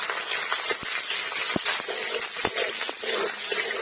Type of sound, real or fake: real